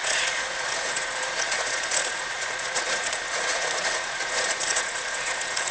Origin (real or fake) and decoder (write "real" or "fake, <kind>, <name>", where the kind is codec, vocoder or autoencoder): fake, vocoder, Vocos